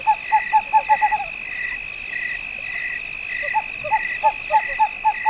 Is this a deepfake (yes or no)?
no